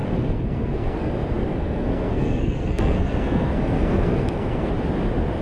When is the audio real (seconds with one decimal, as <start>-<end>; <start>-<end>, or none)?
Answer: 1.1-1.5; 4.7-5.4